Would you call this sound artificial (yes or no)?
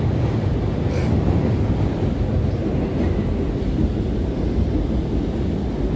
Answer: no